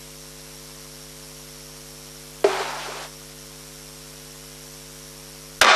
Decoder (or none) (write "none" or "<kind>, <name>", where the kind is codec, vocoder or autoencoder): none